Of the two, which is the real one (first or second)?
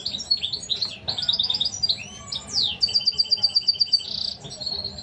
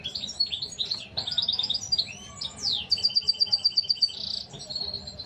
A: first